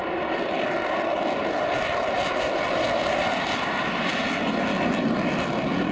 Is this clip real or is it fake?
real